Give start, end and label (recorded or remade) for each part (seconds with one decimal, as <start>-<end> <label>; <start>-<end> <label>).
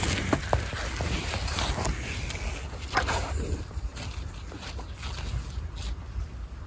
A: 0.0-6.7 recorded